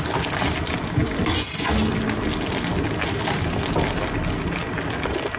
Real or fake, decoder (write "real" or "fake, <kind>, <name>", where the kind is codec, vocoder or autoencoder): real